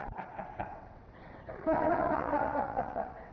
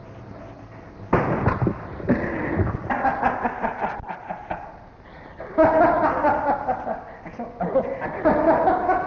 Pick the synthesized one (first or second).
first